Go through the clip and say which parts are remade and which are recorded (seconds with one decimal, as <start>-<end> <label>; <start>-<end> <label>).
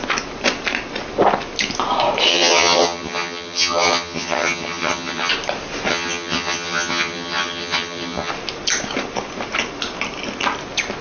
0.0-2.3 recorded; 2.3-5.3 remade; 5.3-5.9 recorded; 5.9-8.3 remade; 8.3-11.0 recorded